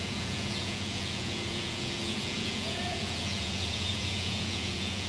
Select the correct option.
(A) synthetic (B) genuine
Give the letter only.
A